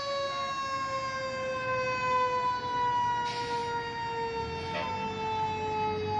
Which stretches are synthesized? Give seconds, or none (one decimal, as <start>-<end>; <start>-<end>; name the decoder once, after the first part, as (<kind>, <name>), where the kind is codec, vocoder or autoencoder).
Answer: none

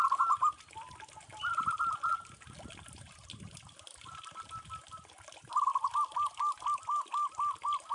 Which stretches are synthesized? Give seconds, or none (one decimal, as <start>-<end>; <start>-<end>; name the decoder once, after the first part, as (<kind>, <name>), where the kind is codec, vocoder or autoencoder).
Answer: none

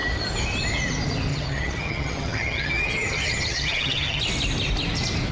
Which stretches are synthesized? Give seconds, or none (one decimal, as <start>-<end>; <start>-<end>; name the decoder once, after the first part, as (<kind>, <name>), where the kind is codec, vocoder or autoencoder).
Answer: 1.3-4.2 (vocoder, HiFi-GAN)

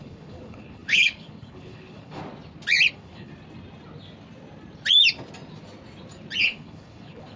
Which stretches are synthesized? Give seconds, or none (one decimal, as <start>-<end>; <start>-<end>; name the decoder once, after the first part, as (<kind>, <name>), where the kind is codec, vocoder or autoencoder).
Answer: 0.0-2.2 (codec, HILCodec); 2.9-3.3; 6.4-7.4